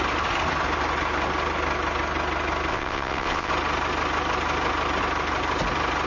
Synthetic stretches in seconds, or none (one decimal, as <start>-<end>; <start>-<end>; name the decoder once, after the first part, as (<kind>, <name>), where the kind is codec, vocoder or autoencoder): 2.7-3.5 (vocoder, WaveNeXt)